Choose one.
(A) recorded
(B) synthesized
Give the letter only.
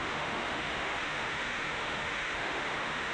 B